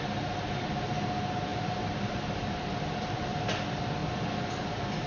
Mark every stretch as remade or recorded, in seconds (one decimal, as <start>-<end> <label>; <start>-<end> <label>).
0.0-1.5 recorded; 1.5-3.4 remade; 3.4-4.0 recorded; 4.0-5.1 remade